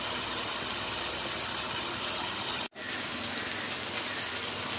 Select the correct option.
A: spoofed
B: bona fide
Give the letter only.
B